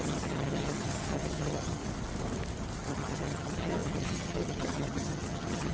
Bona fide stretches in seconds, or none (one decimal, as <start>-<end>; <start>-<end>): 1.8-2.9